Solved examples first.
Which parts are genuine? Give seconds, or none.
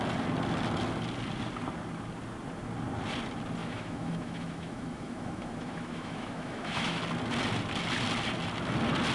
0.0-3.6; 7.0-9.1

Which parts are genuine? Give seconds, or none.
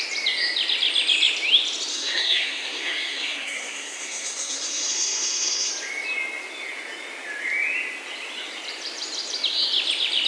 0.0-1.9; 5.7-10.3